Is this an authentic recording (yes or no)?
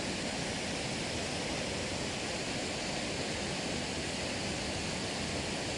yes